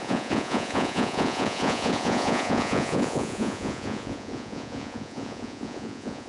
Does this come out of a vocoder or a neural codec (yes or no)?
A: yes